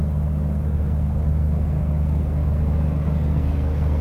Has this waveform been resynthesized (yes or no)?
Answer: yes